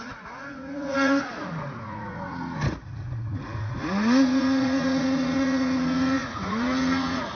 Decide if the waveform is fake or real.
fake